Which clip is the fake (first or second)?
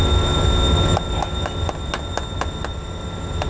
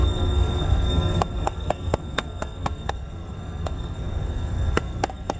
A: second